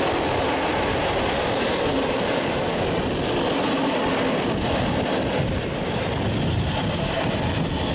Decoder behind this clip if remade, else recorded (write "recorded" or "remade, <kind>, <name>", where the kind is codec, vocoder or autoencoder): recorded